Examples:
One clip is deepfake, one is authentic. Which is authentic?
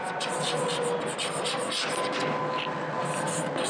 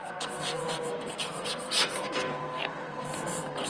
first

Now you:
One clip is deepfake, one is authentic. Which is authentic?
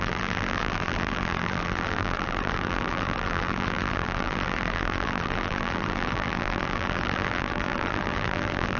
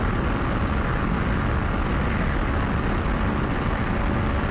second